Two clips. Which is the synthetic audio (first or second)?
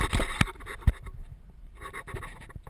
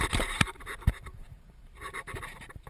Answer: second